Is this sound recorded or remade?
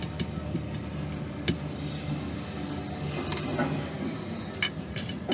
recorded